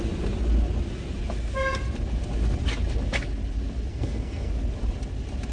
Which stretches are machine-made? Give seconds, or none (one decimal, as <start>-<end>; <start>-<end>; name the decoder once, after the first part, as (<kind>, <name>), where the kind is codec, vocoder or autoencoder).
3.9-4.5 (codec, SNAC)